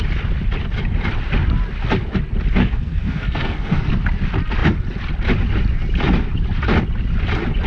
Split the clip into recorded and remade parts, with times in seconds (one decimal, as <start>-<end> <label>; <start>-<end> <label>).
0.0-2.6 recorded; 2.6-3.9 remade; 3.9-7.7 recorded